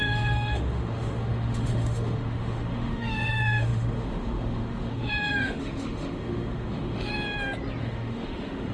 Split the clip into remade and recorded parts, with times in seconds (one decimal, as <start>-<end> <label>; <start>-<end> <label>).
0.0-7.1 remade; 7.1-7.8 recorded; 7.8-8.7 remade